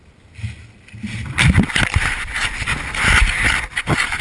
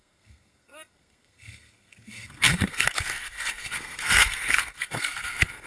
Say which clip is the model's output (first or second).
second